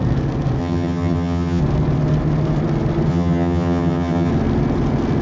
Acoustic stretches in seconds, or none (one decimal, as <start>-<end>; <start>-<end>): 0.0-0.6; 1.6-3.1; 4.3-5.2